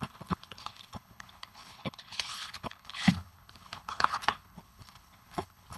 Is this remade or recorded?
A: remade